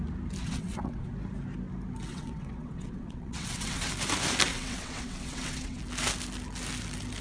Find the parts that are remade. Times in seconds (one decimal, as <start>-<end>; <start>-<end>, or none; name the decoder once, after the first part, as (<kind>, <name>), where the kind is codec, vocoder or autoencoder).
0.4-1.1 (vocoder, WaveNeXt); 2.1-3.9; 4.5-5.8